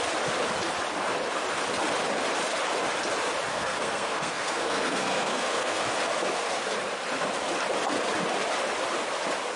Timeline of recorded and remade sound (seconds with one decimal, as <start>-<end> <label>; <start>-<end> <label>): 0.0-3.5 recorded; 3.5-5.8 remade; 5.8-9.6 recorded